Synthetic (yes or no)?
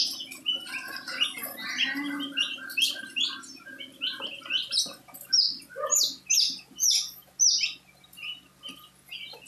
no